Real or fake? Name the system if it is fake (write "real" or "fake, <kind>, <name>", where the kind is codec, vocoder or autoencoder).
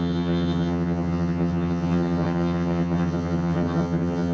fake, vocoder, HiFi-GAN